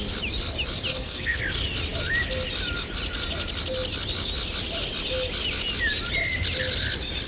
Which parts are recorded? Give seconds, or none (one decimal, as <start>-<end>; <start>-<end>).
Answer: 0.0-0.9; 1.4-7.3